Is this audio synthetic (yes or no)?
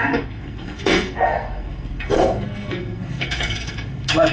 yes